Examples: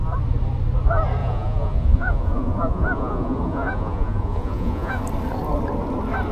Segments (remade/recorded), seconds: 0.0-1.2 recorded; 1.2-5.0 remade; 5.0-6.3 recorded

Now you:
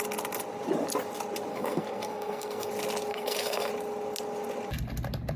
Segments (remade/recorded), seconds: 0.0-1.5 recorded; 1.5-2.7 remade; 2.7-3.1 recorded; 3.1-3.7 remade; 3.7-5.4 recorded

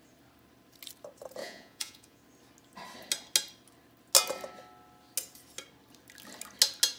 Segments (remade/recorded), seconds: 0.0-1.4 recorded; 1.4-2.2 remade; 2.2-7.0 recorded

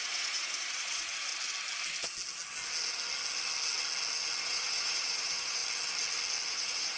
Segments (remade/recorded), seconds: 0.0-1.3 remade; 1.3-4.4 recorded; 4.4-5.6 remade; 5.6-6.5 recorded; 6.5-7.0 remade

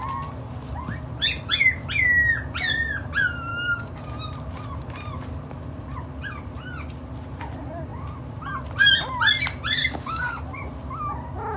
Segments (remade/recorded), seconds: 0.0-3.5 recorded; 3.5-4.1 remade; 4.1-9.8 recorded; 9.8-10.4 remade; 10.4-11.6 recorded

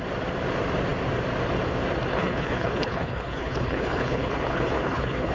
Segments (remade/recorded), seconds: 0.0-2.1 recorded; 2.1-5.3 remade